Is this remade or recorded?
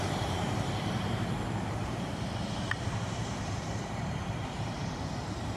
remade